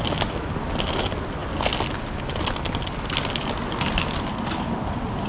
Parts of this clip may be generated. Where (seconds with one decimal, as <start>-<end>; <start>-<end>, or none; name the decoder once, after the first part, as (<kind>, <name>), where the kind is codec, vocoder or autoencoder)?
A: none